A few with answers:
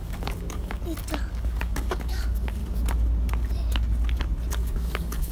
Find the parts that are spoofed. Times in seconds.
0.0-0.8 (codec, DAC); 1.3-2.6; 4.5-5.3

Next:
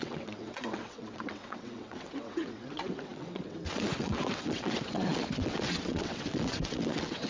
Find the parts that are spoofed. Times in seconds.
0.0-7.3 (vocoder, WaveNeXt)

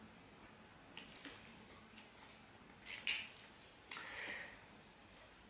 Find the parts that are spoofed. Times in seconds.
none

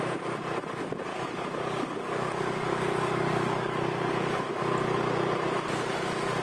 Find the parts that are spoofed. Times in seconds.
1.1-4.6 (codec, DAC)

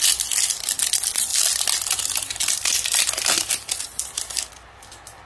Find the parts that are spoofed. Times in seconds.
none

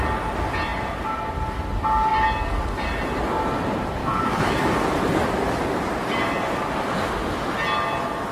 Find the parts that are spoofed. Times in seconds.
4.0-4.7 (autoencoder, DAC-VAE)